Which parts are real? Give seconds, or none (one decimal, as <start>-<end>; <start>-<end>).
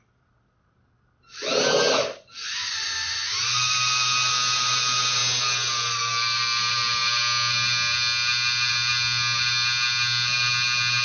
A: 0.0-11.0